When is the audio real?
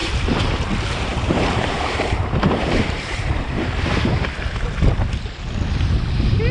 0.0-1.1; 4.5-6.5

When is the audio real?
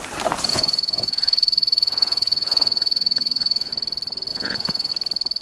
0.0-0.5; 3.7-4.3; 4.9-5.4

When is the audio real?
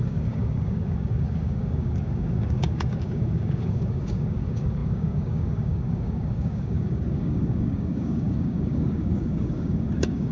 none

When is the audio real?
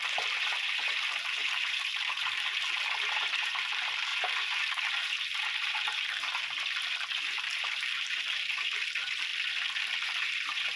9.3-10.2